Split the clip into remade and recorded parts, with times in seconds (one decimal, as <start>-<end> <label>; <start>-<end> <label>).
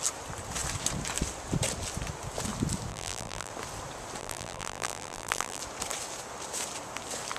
0.0-2.9 recorded; 2.9-3.5 remade; 3.5-4.2 recorded; 4.2-5.6 remade; 5.6-7.4 recorded